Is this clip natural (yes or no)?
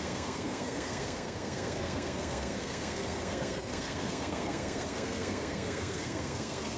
no